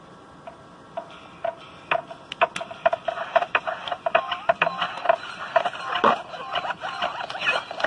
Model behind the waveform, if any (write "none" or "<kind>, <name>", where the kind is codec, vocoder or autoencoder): none